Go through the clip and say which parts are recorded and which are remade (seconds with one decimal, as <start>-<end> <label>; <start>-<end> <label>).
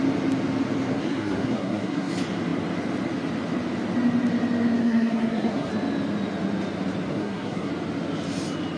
0.0-0.9 recorded; 0.9-2.1 remade; 2.1-4.8 recorded; 4.8-5.7 remade; 5.7-7.1 recorded; 7.1-7.7 remade; 7.7-8.8 recorded